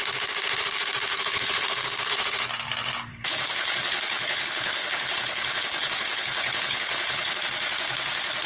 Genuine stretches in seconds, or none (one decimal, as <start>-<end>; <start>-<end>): 0.0-1.1; 2.1-3.1; 7.4-8.5